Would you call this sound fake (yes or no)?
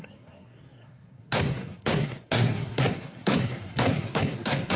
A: yes